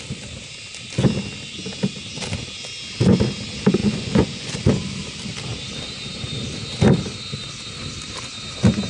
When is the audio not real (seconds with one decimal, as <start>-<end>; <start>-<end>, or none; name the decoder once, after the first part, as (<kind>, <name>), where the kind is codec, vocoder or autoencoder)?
3.8-4.6 (vocoder, Vocos)